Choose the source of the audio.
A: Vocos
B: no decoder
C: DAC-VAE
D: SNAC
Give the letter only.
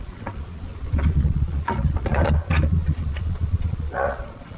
A